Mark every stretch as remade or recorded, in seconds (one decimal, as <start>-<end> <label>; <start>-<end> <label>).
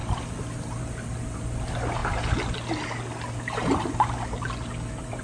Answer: 0.0-5.2 recorded